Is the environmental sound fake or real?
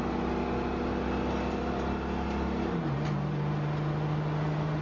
real